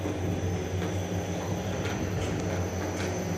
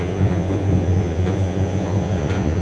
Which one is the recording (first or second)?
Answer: first